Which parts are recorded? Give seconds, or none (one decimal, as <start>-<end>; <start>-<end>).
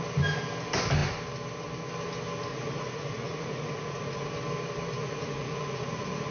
0.0-2.5; 4.3-5.0